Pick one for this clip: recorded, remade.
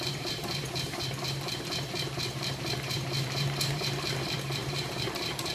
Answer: remade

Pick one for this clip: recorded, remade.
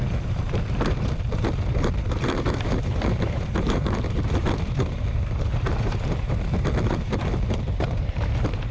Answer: remade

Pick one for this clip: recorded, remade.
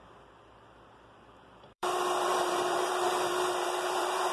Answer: remade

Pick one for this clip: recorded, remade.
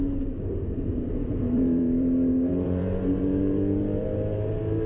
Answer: remade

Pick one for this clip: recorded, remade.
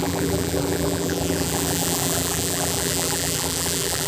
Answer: remade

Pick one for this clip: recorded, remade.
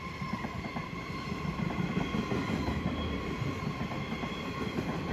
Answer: recorded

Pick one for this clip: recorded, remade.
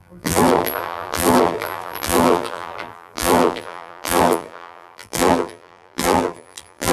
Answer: remade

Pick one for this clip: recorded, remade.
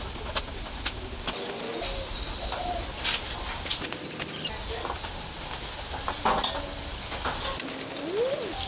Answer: recorded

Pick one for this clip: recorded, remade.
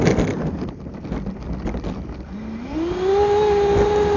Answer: recorded